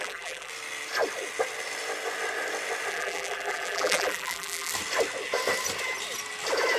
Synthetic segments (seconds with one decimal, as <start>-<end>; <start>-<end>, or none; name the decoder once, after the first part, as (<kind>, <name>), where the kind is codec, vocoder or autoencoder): 0.0-0.5 (vocoder, BigVGAN v2); 2.9-4.7